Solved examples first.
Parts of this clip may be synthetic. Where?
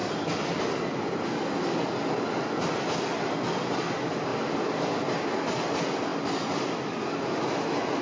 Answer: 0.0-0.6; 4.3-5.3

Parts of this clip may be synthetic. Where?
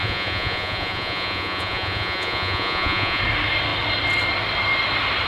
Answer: 0.0-3.2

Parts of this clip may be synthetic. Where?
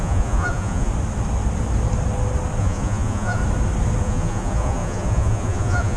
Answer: 0.0-0.9; 2.6-3.4; 4.0-6.0